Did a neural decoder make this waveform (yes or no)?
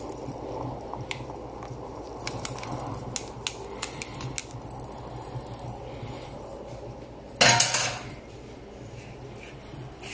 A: no